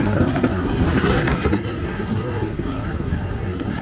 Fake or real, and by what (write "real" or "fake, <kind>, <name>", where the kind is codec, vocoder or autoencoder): fake, codec, SNAC